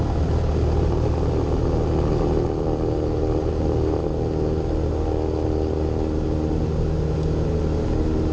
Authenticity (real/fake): real